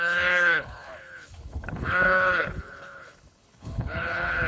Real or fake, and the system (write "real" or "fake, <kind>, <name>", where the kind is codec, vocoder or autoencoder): fake, codec, HILCodec